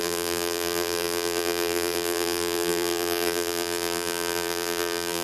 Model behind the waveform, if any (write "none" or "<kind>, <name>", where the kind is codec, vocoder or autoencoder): vocoder, BigVGAN v2